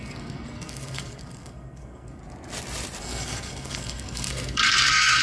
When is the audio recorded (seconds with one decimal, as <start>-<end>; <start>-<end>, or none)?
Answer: 2.2-3.0